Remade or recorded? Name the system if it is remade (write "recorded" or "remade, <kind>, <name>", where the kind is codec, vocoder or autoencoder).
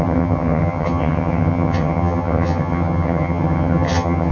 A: remade, vocoder, HiFi-GAN